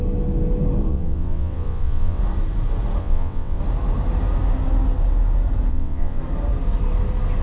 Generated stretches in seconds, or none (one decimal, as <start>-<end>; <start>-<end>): 0.9-2.2; 3.0-3.6; 5.7-6.2